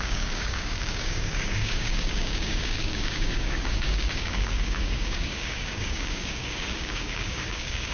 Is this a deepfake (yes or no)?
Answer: yes